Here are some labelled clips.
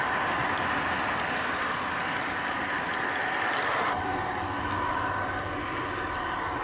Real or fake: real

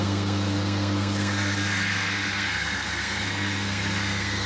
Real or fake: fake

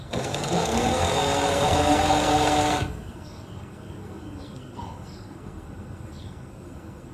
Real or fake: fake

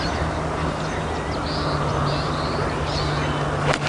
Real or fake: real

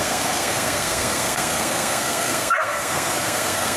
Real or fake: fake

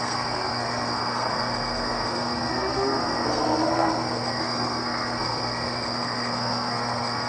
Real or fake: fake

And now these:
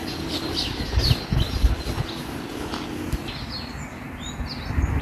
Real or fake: real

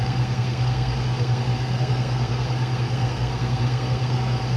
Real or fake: fake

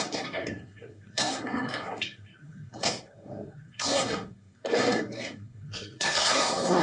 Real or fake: fake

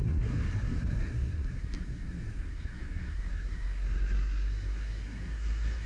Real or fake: fake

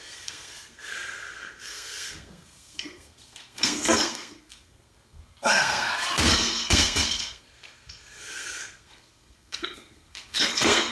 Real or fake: fake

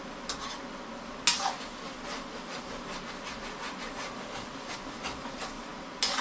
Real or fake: real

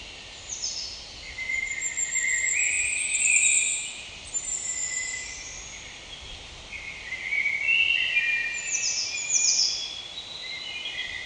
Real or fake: real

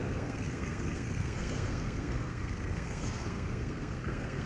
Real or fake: fake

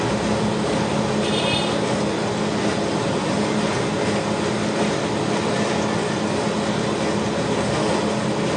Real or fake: real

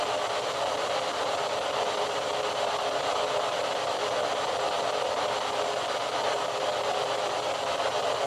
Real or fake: real